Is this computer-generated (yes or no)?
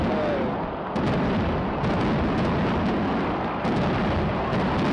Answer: no